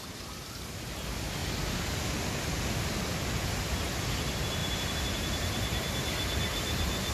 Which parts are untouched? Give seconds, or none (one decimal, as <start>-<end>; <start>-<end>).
0.0-4.6